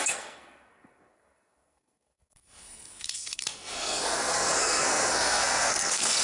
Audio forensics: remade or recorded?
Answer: remade